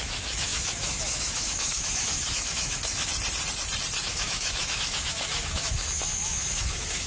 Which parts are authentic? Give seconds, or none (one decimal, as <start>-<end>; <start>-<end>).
3.1-4.0